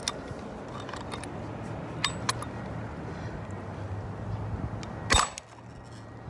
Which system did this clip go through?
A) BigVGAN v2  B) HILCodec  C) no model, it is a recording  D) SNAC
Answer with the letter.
C